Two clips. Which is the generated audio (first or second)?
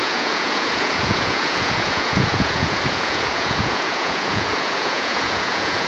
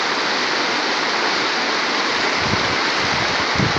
first